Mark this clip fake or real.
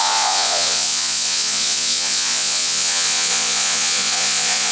fake